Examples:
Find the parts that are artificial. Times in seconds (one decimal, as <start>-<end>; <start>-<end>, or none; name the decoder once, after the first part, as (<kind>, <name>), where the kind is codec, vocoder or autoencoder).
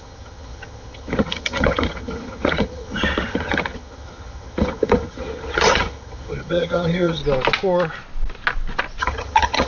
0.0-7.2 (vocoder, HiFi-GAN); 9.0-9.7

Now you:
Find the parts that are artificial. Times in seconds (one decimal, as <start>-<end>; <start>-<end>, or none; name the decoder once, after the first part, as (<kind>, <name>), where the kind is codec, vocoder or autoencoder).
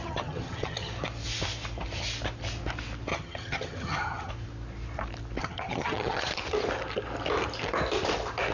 0.0-0.9 (vocoder, HiFi-GAN); 3.1-4.3; 5.4-6.3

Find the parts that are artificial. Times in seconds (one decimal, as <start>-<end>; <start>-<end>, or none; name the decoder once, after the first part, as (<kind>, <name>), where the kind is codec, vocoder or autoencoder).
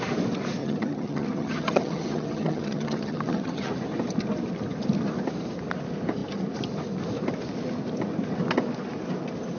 0.6-3.7 (vocoder, HiFi-GAN)